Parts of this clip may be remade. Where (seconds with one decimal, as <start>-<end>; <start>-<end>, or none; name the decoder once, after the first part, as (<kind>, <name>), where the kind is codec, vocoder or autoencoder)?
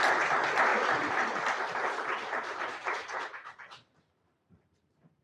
0.0-0.7 (vocoder, BigVGAN v2); 1.6-5.2